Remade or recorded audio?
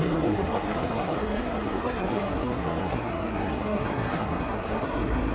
remade